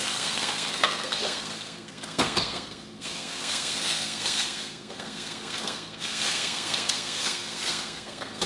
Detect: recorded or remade remade